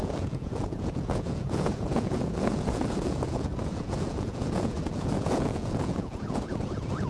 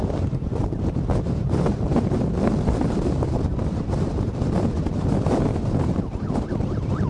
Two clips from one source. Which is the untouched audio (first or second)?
second